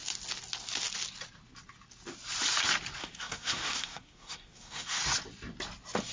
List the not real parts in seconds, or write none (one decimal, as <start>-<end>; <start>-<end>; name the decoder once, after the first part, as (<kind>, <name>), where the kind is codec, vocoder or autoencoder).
3.0-5.0 (codec, SNAC)